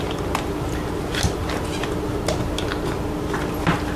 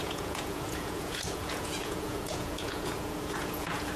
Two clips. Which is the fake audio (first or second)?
second